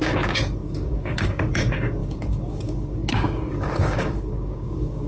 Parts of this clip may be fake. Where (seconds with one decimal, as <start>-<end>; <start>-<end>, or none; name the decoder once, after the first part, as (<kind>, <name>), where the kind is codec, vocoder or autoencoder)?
0.0-5.1 (codec, DAC)